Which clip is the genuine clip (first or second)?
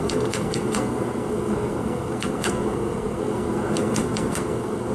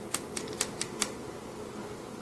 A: second